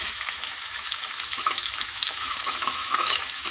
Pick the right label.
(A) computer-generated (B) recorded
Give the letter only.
A